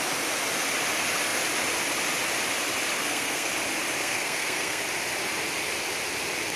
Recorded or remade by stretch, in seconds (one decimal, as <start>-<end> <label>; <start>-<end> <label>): 0.0-3.0 recorded; 3.0-3.5 remade; 3.5-4.0 recorded; 4.0-4.8 remade; 4.8-6.6 recorded